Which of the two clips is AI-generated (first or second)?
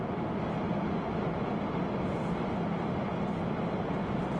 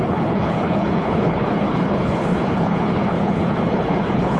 second